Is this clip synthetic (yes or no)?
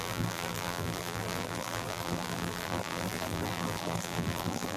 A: yes